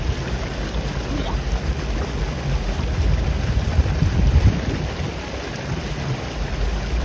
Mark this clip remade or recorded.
recorded